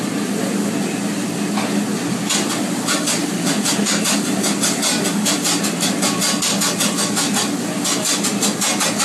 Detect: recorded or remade recorded